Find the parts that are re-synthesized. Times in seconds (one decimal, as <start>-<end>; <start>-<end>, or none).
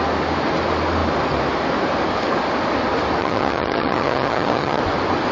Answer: 3.2-4.8